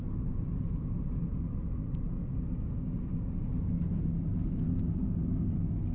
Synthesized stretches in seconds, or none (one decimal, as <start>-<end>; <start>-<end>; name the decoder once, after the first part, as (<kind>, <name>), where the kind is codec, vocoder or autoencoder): none